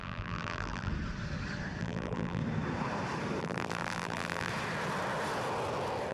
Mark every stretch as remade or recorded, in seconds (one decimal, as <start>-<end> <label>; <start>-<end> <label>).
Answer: 0.0-0.9 remade; 0.9-1.8 recorded; 1.8-2.4 remade; 2.4-3.4 recorded; 3.4-4.5 remade; 4.5-6.1 recorded